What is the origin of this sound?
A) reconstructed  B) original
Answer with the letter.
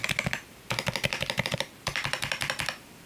A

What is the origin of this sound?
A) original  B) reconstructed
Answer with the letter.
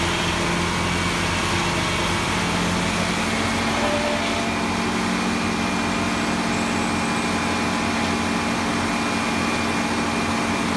A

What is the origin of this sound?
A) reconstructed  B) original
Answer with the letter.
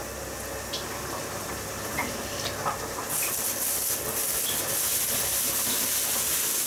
B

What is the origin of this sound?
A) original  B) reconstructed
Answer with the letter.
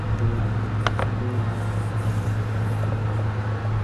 A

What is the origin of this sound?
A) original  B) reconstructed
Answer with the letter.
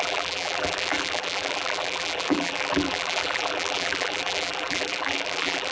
B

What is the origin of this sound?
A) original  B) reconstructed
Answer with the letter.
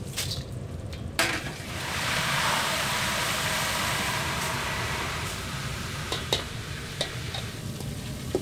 B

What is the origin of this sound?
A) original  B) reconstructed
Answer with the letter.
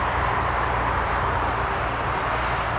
B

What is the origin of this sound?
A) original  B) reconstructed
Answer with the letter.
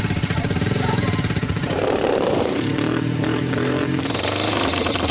B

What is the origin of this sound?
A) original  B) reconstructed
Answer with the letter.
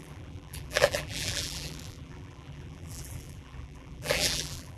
B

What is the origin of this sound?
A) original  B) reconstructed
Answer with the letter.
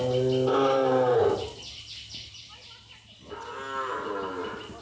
A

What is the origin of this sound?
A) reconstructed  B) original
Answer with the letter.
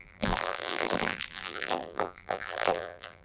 A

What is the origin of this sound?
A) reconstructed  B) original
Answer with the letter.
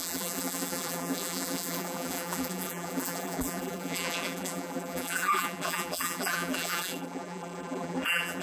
A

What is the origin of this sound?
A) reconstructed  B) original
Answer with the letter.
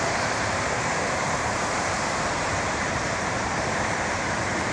A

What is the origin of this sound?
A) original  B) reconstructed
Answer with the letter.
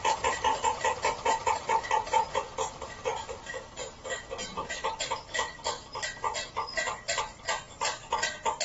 B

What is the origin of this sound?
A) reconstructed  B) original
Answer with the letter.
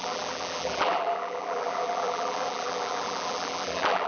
A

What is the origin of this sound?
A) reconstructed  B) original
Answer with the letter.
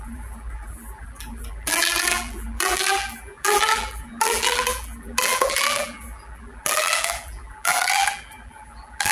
A